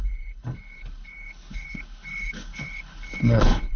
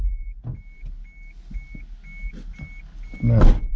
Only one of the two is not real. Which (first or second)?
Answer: first